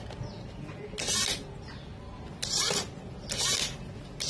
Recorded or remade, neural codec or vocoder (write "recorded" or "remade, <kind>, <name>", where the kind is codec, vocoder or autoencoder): recorded